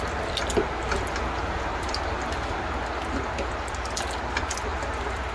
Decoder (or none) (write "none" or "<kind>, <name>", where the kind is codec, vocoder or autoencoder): none